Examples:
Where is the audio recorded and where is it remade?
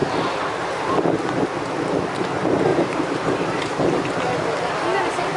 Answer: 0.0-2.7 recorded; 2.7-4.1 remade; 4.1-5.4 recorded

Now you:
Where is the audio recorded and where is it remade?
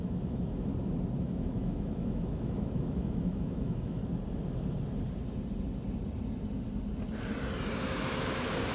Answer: 0.0-0.7 remade; 0.7-1.2 recorded; 1.2-4.0 remade; 4.0-7.8 recorded; 7.8-8.7 remade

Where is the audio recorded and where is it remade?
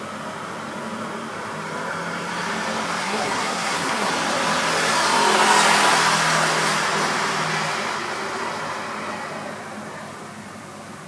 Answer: 0.0-3.0 recorded; 3.0-4.1 remade; 4.1-11.1 recorded